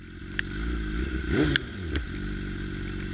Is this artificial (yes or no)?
no